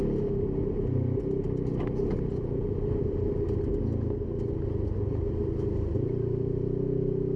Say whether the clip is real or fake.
real